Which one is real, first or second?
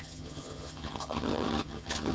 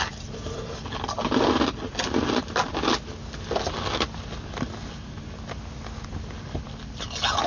second